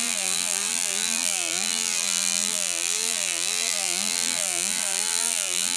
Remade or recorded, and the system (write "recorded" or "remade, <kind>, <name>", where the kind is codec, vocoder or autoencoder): remade, vocoder, BigVGAN v2